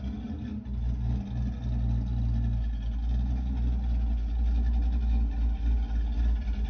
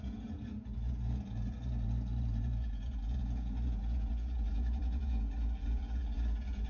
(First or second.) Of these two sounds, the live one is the first